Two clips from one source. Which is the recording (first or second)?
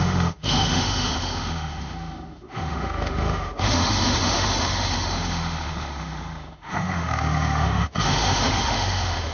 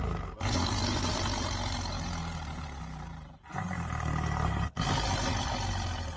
second